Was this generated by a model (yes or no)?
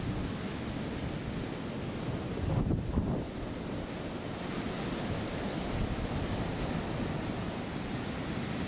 no